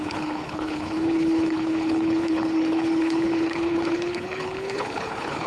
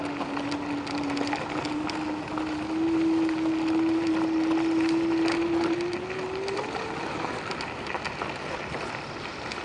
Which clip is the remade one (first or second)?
first